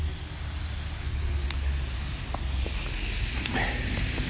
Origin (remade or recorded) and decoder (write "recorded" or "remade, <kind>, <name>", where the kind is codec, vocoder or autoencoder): recorded